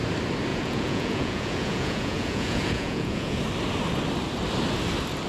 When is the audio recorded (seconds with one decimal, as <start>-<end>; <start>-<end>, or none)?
0.0-0.5; 3.4-5.3

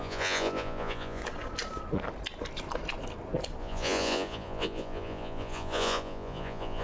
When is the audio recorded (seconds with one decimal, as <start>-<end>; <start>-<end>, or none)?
1.2-3.6

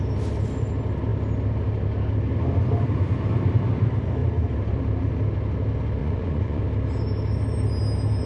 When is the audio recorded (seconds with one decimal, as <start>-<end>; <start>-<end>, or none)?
0.0-6.0; 6.6-8.3

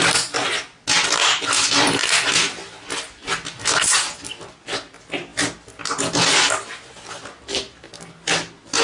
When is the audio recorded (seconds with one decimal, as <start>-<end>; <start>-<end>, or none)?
0.0-8.8

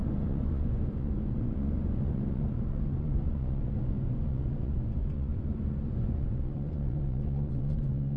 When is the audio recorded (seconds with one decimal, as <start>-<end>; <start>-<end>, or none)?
none

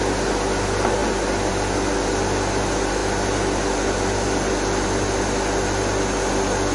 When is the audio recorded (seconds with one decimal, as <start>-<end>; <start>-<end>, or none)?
0.0-6.7

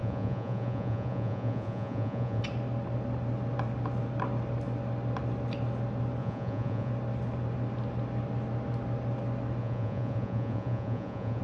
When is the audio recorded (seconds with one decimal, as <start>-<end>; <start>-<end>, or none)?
2.4-6.2; 6.9-9.6

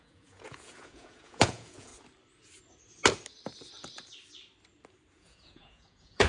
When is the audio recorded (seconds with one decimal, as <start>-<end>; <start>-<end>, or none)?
1.9-5.1